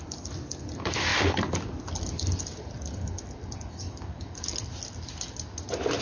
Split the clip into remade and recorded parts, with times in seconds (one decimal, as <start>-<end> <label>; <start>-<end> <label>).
0.0-4.5 remade; 4.5-6.0 recorded